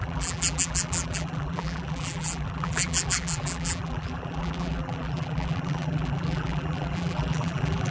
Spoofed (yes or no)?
yes